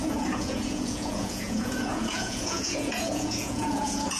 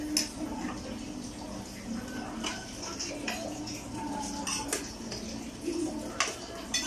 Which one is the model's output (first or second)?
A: first